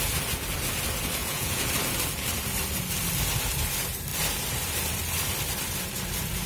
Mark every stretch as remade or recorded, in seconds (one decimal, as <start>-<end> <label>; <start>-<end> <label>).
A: 0.0-1.2 recorded; 1.2-1.7 remade; 1.7-6.5 recorded